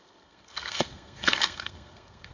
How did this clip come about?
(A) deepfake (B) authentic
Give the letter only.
A